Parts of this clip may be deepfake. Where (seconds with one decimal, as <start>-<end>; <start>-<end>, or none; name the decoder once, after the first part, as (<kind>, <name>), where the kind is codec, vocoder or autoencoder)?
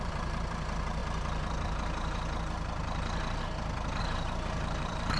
0.0-1.0 (vocoder, BigVGAN v2); 4.0-5.2